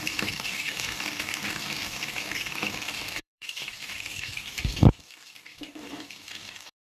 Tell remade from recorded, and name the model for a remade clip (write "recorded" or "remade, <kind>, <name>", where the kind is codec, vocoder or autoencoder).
remade, codec, DAC